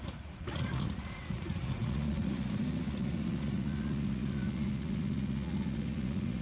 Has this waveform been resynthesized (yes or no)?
yes